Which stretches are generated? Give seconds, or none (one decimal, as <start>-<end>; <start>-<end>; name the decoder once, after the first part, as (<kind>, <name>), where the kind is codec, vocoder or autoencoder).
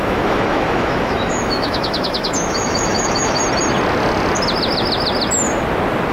0.0-3.4 (autoencoder, DAC-VAE)